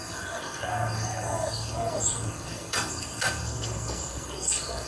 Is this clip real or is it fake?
fake